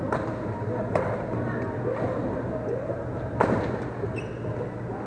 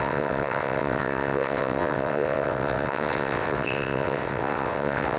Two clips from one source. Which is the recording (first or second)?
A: first